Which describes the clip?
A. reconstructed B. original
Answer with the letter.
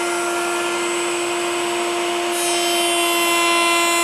B